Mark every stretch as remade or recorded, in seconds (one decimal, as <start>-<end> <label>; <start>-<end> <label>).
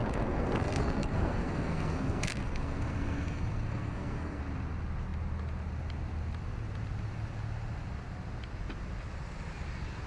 0.0-4.4 remade; 4.4-10.1 recorded